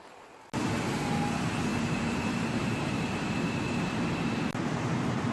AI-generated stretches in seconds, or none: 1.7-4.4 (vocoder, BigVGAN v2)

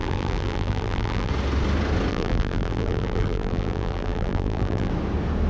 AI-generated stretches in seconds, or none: 0.0-1.3 (vocoder, BigVGAN v2); 2.1-4.9

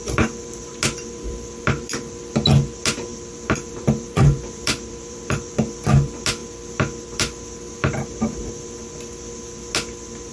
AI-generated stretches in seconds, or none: 3.1-5.7 (vocoder, BigVGAN v2)